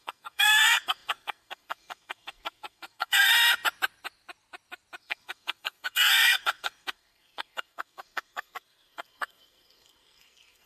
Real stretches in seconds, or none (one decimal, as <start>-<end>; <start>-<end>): 3.3-5.0